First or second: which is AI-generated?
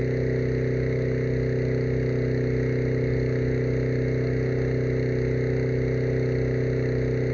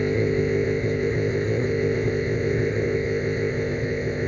second